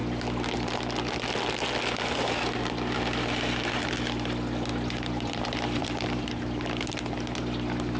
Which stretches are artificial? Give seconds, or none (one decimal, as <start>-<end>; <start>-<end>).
4.7-6.2